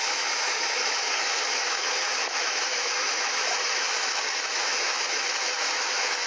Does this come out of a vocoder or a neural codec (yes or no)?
yes